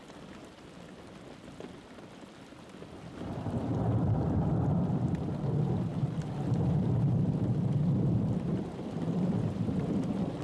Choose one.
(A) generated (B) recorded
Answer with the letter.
A